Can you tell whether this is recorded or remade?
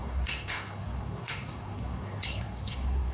remade